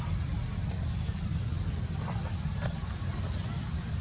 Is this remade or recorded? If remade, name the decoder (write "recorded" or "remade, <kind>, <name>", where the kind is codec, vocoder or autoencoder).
recorded